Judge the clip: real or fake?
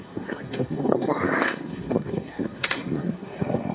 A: fake